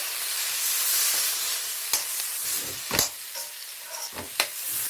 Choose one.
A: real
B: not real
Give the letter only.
A